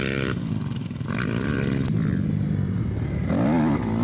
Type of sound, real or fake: real